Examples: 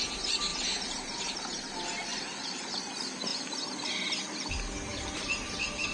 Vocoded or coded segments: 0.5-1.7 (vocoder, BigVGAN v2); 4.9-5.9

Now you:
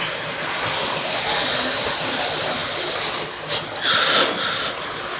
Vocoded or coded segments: none

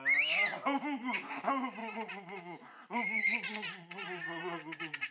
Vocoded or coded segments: 1.8-5.1 (vocoder, Vocos)

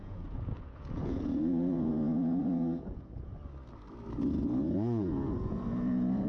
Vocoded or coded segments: 0.0-3.3 (vocoder, Vocos); 4.6-6.3

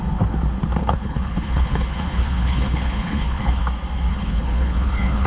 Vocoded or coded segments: 0.8-3.6 (codec, HILCodec); 4.1-5.3

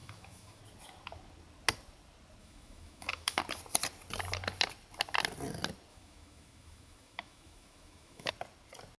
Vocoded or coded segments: 0.0-0.6 (autoencoder, DAC-VAE); 2.4-3.4; 5.9-8.3

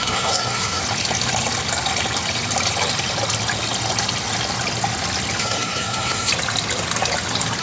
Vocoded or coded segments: 0.0-0.8 (codec, SNAC); 5.4-6.3